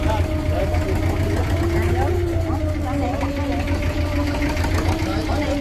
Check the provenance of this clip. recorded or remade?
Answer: recorded